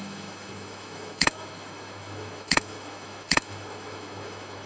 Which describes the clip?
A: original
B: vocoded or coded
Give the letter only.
B